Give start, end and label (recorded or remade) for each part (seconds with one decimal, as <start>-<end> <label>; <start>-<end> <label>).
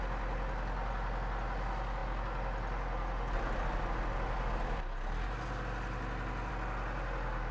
0.0-7.5 recorded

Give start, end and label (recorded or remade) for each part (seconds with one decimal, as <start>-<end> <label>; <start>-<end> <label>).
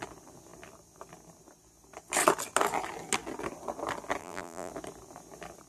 0.0-4.2 recorded; 4.2-4.7 remade; 4.7-5.7 recorded